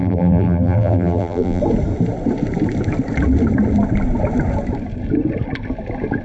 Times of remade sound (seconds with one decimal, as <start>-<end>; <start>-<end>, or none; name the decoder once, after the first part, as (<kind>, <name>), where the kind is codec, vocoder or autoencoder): 0.0-1.6 (vocoder, BigVGAN v2)